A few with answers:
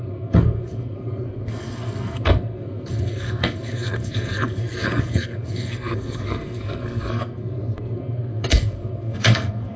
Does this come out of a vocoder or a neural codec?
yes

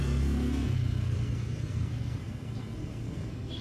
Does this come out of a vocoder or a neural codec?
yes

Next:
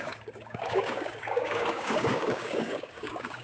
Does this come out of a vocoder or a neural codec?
yes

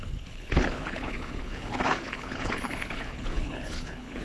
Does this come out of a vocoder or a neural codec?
yes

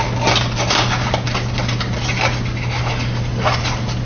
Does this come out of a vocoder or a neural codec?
no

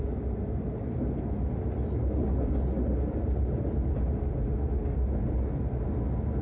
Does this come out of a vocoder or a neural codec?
no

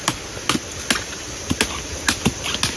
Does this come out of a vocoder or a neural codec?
no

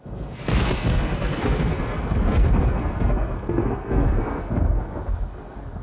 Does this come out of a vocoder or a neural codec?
yes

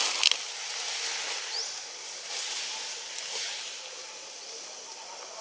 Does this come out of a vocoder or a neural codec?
no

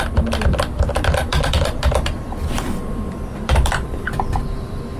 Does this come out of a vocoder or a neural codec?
yes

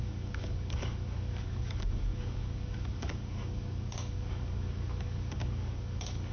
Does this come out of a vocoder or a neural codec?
yes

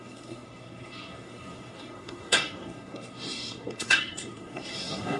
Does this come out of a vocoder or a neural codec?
yes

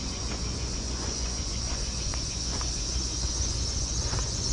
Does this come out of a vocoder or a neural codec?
yes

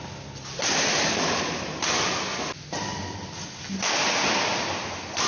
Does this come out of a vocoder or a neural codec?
no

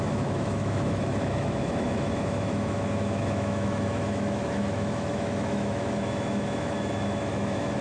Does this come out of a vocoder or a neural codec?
yes